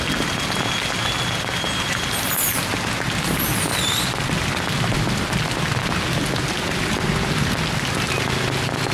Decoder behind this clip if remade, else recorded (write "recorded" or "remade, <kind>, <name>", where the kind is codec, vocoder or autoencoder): recorded